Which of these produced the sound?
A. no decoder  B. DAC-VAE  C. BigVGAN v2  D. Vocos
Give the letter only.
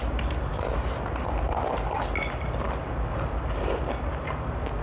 A